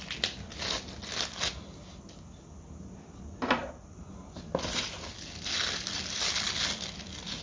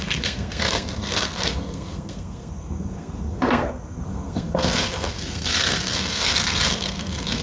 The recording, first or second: first